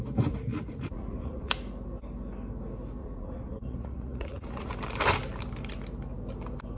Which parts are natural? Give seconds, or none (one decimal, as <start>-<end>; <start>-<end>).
0.0-0.5; 1.5-3.0; 4.7-6.8